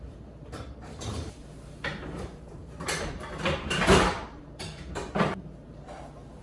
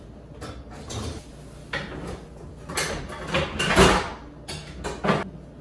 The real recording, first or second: second